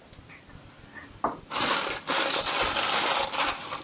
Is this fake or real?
real